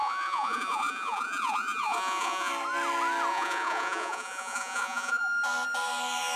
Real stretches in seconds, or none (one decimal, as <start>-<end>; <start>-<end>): 2.5-3.3; 5.2-6.4